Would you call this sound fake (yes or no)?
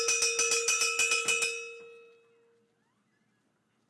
no